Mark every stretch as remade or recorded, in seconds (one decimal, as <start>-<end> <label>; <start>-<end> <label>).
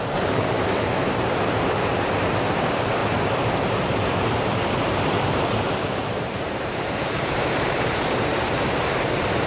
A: 0.0-3.0 remade; 3.0-4.2 recorded; 4.2-9.5 remade